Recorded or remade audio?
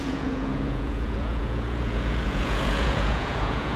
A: remade